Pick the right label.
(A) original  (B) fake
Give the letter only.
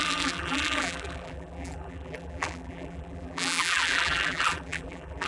B